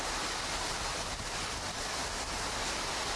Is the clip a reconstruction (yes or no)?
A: no